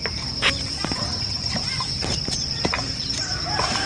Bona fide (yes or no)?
no